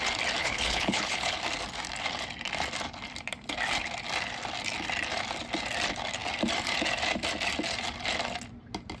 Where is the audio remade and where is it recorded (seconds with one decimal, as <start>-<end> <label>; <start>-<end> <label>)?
0.0-0.4 recorded; 0.4-1.4 remade; 1.4-9.0 recorded